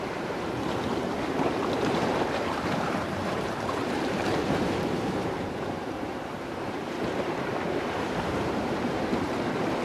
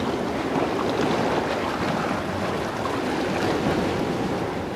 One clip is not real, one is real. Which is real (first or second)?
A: second